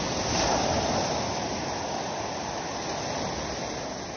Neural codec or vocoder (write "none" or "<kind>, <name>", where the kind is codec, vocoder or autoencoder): none